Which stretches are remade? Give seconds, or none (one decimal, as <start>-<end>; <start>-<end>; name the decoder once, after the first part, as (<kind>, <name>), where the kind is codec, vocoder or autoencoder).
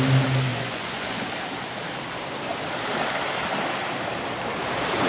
0.5-1.3 (vocoder, Vocos)